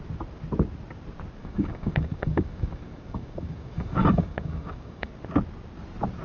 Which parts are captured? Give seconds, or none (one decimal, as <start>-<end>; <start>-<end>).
0.0-1.4; 5.1-6.2